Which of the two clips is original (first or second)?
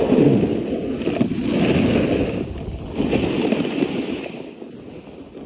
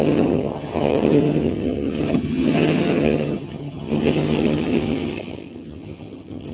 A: first